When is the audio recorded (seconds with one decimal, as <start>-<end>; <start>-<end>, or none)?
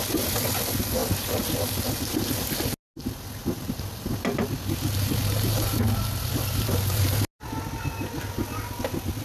0.0-9.2